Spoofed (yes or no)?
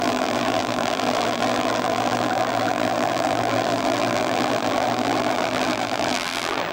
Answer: yes